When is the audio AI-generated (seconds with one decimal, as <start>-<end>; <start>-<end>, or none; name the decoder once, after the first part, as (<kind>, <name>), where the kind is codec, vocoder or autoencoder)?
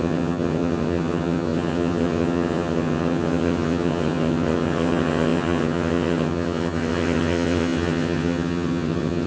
0.0-9.3 (vocoder, HiFi-GAN)